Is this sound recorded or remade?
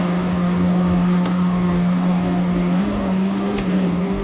remade